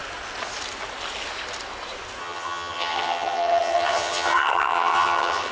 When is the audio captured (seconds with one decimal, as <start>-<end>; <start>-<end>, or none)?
0.0-2.2